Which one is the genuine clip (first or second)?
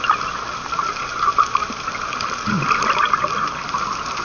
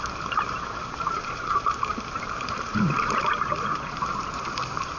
first